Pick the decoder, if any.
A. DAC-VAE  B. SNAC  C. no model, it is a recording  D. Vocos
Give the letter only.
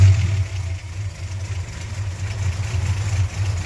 C